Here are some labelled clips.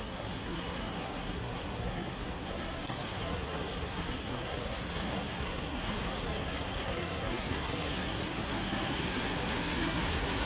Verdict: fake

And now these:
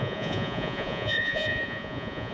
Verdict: fake